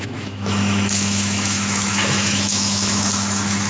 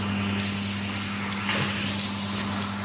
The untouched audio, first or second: second